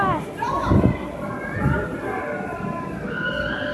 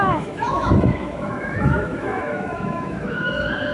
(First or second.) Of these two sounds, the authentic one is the first